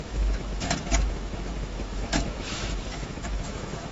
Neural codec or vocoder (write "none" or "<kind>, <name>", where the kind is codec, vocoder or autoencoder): autoencoder, DAC-VAE